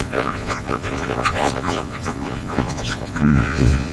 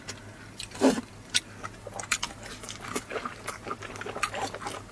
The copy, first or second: first